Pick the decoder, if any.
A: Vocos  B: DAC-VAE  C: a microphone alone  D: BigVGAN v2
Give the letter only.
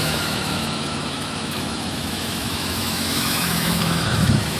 B